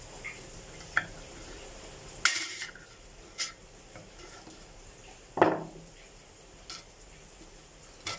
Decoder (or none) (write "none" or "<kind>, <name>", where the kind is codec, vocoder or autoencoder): none